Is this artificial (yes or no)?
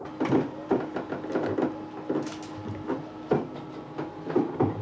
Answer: no